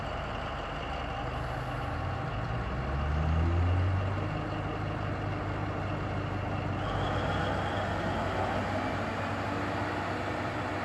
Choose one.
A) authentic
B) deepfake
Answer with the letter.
A